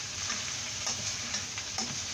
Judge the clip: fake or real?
fake